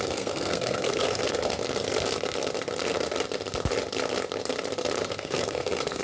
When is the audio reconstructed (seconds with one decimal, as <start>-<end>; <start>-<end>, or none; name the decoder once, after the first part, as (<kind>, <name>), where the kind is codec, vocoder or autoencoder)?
0.0-1.5 (codec, SNAC); 5.1-6.0

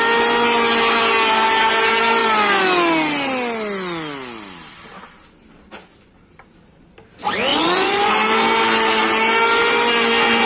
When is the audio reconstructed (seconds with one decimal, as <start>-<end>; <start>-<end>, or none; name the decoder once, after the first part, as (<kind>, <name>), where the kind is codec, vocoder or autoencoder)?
7.5-8.1 (vocoder, Vocos)

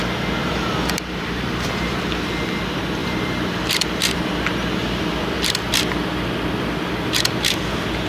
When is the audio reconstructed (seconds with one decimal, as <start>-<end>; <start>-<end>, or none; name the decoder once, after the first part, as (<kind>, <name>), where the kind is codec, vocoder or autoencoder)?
0.4-2.3 (vocoder, BigVGAN v2); 3.0-4.2; 4.8-5.7

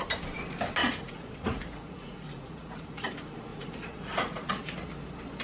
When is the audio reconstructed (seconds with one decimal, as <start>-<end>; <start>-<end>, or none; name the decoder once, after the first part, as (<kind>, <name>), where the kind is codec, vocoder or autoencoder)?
0.8-3.1 (vocoder, Vocos); 3.5-4.5

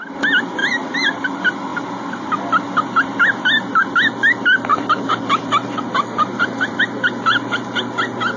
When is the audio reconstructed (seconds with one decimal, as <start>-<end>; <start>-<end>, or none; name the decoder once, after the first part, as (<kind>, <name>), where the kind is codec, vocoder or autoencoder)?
0.6-1.2 (vocoder, BigVGAN v2); 4.7-8.0

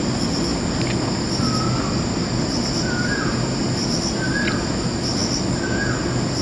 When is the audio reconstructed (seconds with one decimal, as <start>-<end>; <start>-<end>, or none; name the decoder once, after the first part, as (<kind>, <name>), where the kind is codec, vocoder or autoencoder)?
none

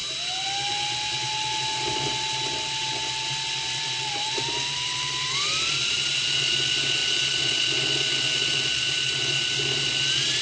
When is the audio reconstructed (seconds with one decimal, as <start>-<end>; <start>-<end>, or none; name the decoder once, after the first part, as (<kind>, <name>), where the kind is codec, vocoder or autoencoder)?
none

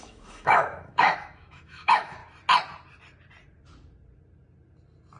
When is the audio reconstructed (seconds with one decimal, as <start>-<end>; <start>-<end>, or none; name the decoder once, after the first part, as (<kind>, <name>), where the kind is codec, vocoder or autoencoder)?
0.0-2.2 (autoencoder, DAC-VAE)